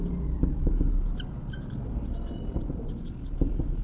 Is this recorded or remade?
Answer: recorded